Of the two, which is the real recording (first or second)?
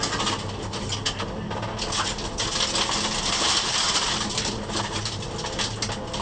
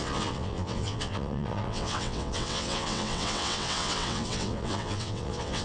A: first